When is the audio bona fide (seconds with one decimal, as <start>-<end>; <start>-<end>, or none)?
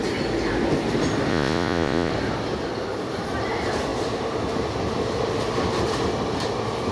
0.0-1.3; 2.1-6.9